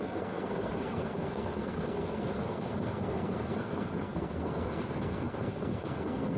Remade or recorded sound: remade